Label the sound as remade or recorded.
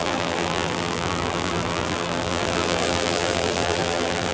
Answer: remade